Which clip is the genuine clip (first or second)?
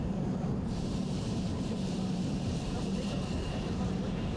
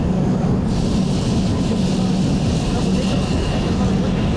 second